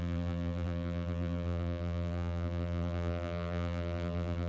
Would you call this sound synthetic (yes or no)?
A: yes